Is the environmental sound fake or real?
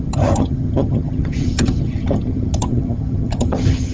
fake